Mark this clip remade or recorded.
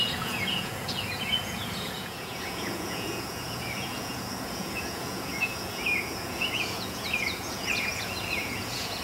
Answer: remade